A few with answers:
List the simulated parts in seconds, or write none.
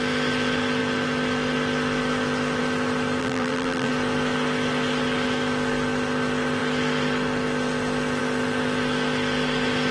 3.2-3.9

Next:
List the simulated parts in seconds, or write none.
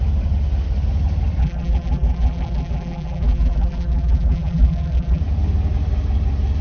1.4-5.2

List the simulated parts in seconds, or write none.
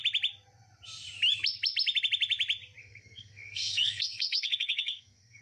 2.8-5.4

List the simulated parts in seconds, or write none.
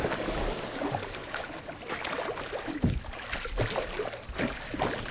none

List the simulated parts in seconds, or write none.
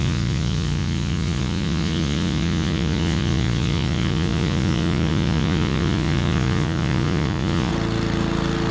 0.0-7.7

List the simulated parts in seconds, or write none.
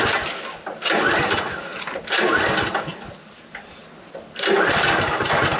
none